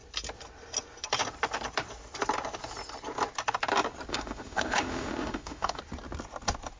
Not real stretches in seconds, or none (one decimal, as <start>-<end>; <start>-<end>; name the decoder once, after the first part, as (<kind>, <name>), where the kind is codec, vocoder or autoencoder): 4.1-5.8 (autoencoder, DAC-VAE)